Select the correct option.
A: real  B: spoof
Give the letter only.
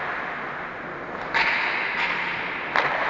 A